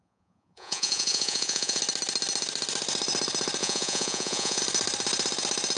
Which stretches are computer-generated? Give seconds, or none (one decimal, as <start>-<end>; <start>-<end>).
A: 0.0-1.8; 3.6-4.6